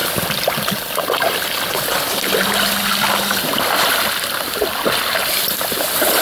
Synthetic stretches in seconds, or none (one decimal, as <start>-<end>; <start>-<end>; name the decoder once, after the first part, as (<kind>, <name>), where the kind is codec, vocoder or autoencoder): none